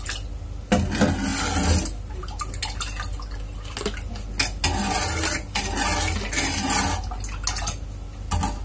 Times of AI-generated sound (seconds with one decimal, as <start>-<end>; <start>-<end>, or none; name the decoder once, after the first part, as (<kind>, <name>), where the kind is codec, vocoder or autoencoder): none